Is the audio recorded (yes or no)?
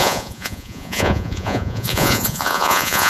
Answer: no